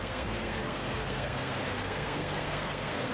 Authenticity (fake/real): fake